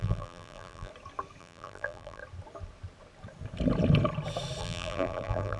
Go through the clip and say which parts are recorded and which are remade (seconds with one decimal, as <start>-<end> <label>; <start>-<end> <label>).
0.0-0.9 remade; 0.9-1.4 recorded; 1.4-2.2 remade; 2.2-4.6 recorded; 4.6-5.6 remade